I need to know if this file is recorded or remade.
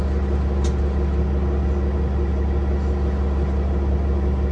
recorded